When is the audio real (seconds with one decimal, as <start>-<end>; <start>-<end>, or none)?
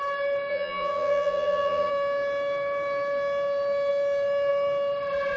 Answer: 0.0-0.5; 1.9-5.4